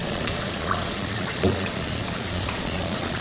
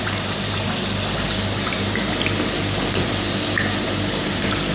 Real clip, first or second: second